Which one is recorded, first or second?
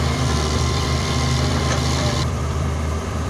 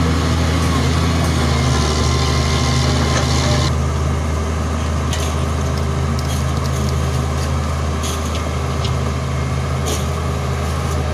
second